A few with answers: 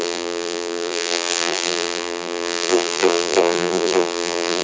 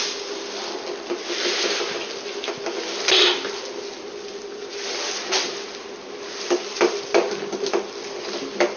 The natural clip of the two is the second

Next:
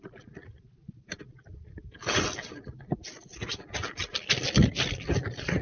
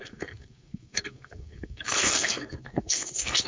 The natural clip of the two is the first